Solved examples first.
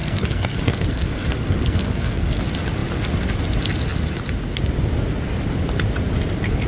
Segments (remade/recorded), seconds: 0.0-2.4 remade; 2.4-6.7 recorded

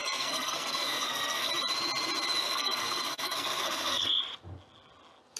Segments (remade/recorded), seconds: 0.0-1.5 remade; 1.5-2.4 recorded; 2.4-4.2 remade; 4.2-5.4 recorded